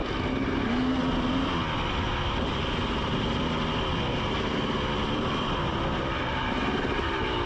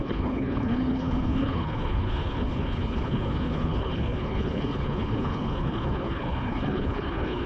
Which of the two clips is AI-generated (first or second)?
second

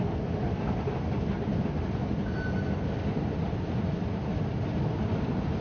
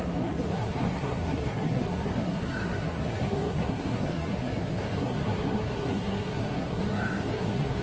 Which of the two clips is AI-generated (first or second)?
second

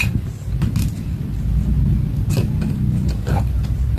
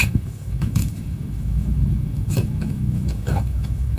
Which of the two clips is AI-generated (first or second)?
second